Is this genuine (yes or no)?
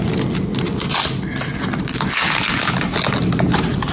yes